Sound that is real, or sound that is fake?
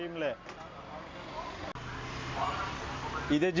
real